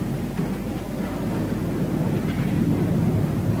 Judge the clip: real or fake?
real